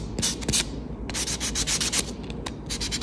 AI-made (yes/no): no